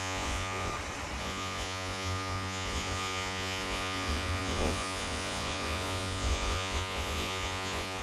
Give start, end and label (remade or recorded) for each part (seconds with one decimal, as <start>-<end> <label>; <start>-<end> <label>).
0.0-0.7 remade; 0.7-1.2 recorded; 1.2-8.0 remade